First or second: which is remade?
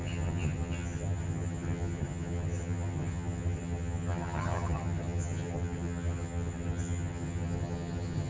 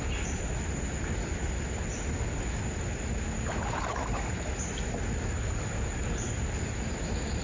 first